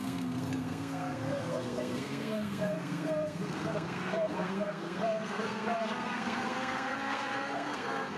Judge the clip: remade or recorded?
remade